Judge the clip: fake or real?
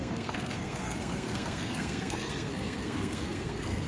fake